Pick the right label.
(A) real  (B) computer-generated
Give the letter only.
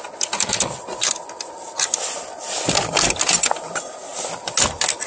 A